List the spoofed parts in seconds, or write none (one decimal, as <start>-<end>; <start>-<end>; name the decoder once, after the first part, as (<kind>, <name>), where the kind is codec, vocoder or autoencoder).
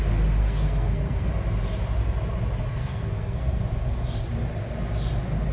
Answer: 0.4-1.3 (codec, SNAC); 2.7-3.6